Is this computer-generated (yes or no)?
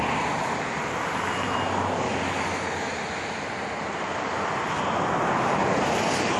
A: no